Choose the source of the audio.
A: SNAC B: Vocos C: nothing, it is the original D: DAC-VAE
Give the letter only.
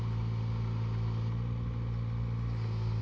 C